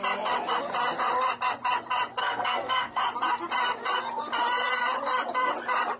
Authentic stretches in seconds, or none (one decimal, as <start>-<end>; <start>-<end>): 0.0-2.2; 3.0-6.0